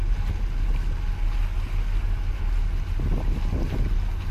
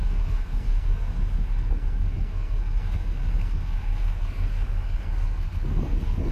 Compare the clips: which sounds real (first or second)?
first